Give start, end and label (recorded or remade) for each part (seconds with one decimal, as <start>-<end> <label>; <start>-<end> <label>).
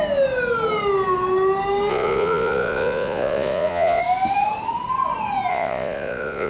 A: 0.0-1.9 recorded; 1.9-4.0 remade; 4.0-5.5 recorded; 5.5-6.5 remade